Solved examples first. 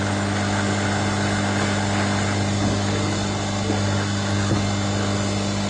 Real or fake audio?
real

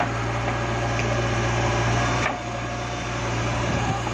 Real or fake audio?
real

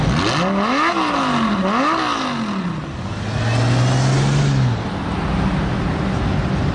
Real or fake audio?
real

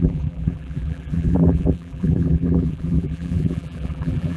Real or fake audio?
fake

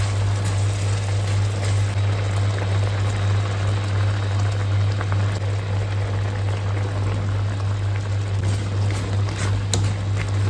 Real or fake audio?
real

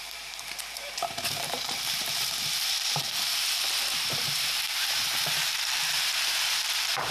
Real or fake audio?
fake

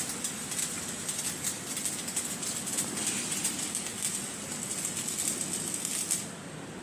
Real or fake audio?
real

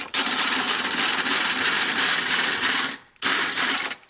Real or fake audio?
fake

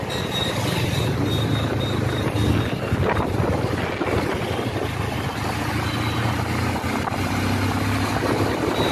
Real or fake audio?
real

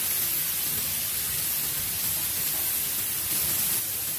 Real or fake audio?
real